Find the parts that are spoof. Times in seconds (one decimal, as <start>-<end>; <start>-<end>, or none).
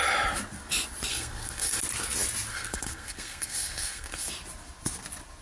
1.1-1.8; 2.5-4.3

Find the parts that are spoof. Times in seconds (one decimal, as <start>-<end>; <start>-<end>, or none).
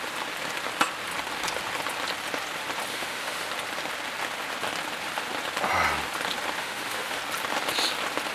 2.9-3.5; 6.6-7.2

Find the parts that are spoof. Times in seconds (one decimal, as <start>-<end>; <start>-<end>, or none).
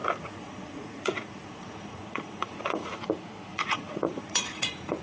0.0-2.9; 3.5-5.0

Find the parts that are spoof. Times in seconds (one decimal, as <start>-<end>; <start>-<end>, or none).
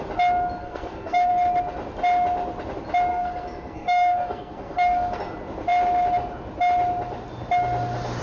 0.6-1.3; 3.1-5.2